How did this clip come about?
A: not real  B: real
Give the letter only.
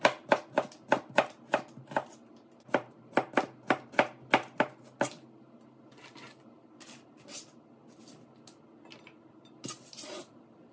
B